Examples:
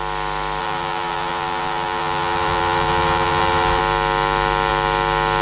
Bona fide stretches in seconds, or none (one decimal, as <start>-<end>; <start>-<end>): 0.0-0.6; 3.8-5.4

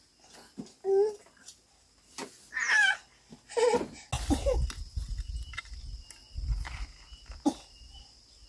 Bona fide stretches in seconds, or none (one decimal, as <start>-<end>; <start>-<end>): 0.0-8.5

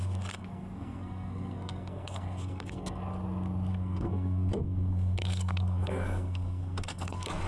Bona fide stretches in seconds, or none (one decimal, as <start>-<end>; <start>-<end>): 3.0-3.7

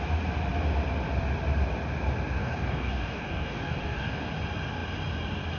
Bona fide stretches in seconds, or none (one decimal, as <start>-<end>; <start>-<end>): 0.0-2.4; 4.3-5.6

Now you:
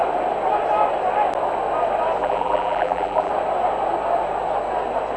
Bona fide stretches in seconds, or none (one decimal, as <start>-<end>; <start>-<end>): 0.0-2.2; 3.3-5.2